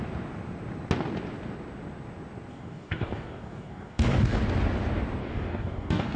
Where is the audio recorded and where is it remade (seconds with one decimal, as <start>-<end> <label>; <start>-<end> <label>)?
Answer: 0.0-2.5 recorded; 2.5-4.4 remade; 4.4-5.2 recorded; 5.2-6.2 remade